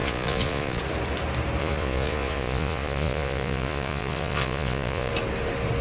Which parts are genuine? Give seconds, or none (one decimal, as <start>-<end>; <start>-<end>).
0.8-1.6; 5.1-5.8